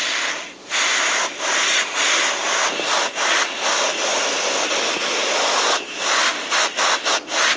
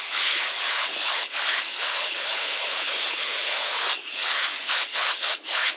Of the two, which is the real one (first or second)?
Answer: first